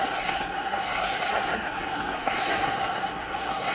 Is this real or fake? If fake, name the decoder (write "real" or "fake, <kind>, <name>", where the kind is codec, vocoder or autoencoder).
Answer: fake, codec, SNAC